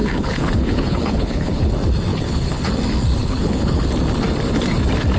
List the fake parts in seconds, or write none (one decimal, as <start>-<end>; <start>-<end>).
0.0-1.7; 2.1-2.7; 3.2-3.8

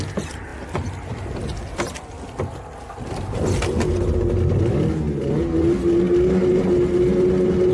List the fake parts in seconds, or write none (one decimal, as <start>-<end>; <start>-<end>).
none

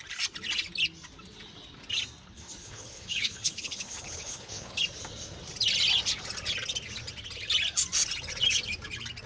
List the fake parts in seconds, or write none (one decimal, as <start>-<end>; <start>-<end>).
2.2-4.8

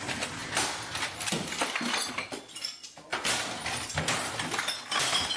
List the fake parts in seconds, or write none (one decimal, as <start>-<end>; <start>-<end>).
none